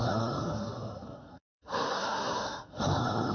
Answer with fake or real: fake